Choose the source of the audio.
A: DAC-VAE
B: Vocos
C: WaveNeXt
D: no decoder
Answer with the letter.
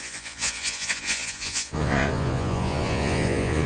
B